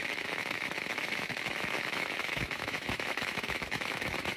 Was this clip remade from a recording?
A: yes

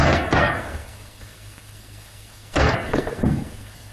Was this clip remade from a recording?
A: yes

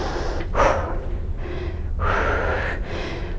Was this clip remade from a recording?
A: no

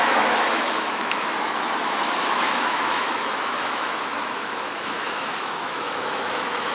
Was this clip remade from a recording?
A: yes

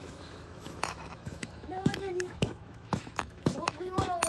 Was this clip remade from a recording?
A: yes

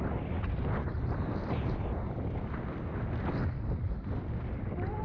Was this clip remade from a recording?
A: no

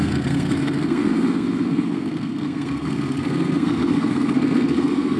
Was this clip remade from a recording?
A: yes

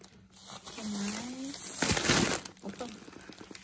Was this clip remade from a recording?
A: no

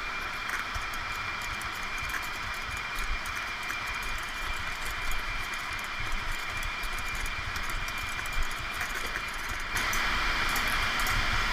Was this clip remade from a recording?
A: yes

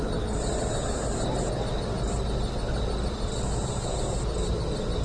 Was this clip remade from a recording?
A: no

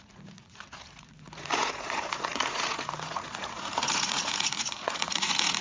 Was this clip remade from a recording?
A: yes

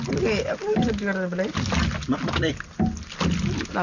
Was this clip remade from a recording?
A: no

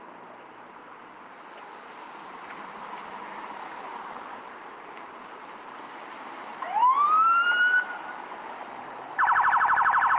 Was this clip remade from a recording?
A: yes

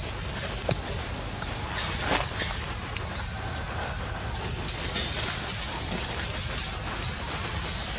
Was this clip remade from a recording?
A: no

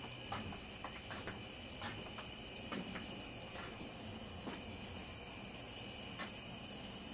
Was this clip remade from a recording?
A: no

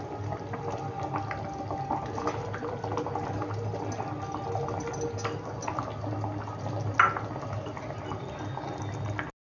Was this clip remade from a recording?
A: no